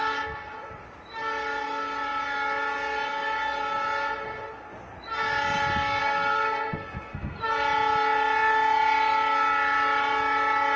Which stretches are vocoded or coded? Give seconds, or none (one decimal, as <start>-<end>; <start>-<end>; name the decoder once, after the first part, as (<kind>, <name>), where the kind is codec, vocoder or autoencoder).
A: 6.0-7.4 (codec, SNAC)